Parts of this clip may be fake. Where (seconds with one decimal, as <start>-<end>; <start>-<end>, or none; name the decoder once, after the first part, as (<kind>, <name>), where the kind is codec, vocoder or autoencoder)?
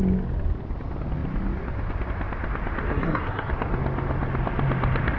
2.9-3.5 (codec, SNAC)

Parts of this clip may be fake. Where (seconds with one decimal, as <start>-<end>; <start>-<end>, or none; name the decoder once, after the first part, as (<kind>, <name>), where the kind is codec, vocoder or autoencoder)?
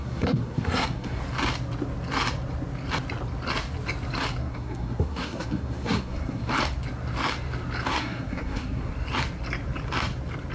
0.0-1.2 (codec, SNAC); 4.4-6.5; 7.9-8.9